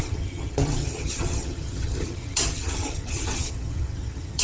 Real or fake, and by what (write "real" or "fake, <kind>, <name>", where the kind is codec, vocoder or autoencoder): fake, vocoder, HiFi-GAN